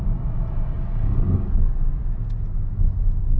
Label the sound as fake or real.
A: real